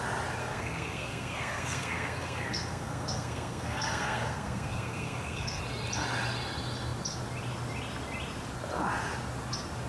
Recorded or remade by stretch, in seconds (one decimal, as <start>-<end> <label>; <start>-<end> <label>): 0.0-0.4 recorded; 0.4-5.6 remade; 5.6-9.9 recorded